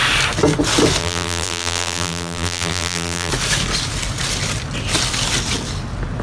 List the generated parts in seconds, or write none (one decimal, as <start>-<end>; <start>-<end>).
1.0-3.3